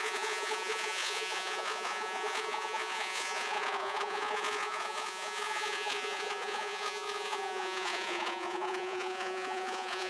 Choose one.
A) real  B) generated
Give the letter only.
B